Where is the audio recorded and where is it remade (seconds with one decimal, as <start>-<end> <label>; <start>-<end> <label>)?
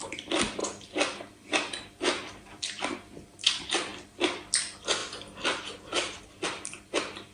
0.0-0.6 remade; 0.6-2.3 recorded; 2.3-3.9 remade; 3.9-4.6 recorded; 4.6-5.0 remade; 5.0-5.8 recorded; 5.8-7.3 remade